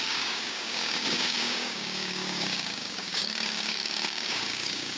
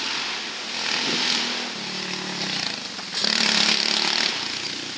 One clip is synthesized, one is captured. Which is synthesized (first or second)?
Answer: first